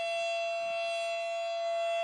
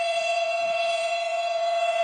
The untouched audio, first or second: first